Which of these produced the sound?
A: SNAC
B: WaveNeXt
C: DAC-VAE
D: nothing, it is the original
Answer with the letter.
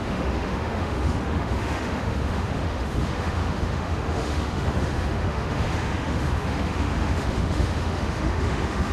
C